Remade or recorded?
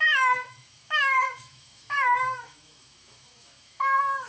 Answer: remade